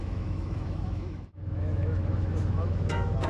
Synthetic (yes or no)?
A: yes